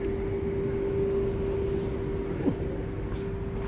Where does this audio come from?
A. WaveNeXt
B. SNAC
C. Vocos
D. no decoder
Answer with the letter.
D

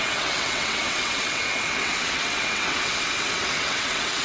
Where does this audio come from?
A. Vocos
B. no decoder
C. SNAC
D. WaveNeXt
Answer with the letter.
D